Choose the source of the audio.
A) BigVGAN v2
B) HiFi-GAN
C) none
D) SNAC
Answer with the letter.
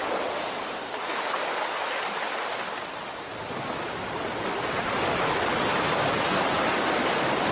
C